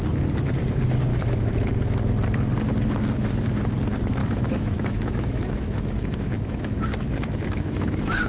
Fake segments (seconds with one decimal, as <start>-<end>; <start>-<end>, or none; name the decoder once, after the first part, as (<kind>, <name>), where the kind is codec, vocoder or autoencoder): 1.1-1.7 (autoencoder, DAC-VAE); 4.2-8.3